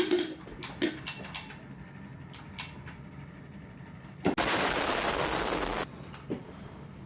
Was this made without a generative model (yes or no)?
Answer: yes